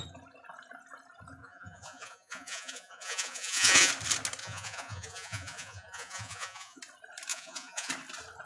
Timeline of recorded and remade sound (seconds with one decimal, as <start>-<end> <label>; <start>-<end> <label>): 0.0-1.4 recorded; 1.4-3.9 remade; 3.9-4.4 recorded; 4.4-6.8 remade; 6.8-7.3 recorded; 7.3-7.9 remade; 7.9-8.5 recorded